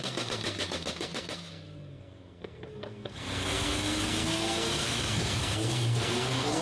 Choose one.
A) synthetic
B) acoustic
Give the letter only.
A